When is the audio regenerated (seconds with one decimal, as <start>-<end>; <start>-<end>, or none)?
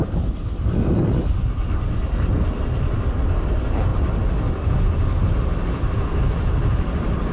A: none